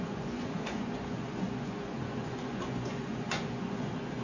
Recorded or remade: remade